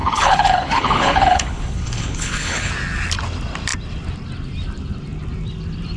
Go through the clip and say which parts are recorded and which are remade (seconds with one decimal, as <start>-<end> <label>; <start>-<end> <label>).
0.0-2.7 remade; 2.7-6.0 recorded